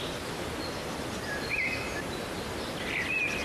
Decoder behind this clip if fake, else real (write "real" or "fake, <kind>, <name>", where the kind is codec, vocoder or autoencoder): real